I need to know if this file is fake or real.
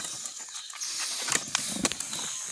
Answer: real